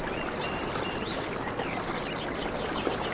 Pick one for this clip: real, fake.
real